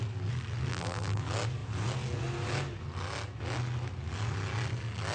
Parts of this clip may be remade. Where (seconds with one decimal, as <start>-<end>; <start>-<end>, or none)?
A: 0.7-1.2